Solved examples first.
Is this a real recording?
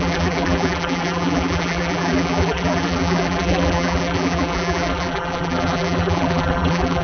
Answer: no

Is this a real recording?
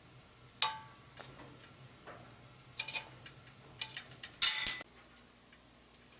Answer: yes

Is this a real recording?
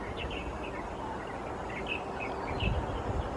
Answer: yes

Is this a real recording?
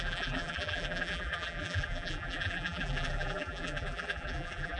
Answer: no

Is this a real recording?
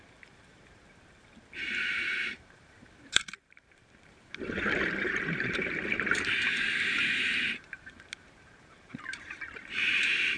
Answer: no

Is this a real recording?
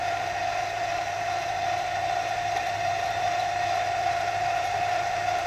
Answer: no